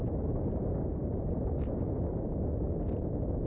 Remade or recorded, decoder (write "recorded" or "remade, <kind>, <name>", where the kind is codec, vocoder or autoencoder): recorded